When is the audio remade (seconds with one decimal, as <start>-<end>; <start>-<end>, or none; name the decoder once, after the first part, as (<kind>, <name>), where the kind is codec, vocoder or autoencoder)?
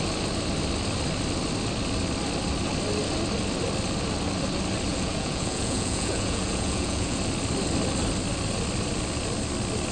4.9-7.2 (vocoder, Vocos)